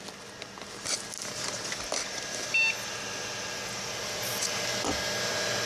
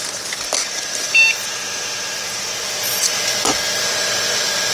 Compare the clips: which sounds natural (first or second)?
first